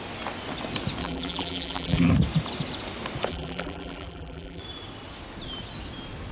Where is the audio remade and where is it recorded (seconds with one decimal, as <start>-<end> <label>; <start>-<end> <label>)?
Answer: 0.0-1.0 recorded; 1.0-2.1 remade; 2.1-3.3 recorded; 3.3-4.6 remade; 4.6-6.3 recorded